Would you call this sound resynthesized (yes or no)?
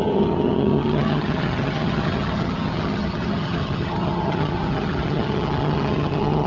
yes